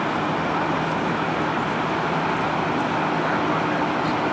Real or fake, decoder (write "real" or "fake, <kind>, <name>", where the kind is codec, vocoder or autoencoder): real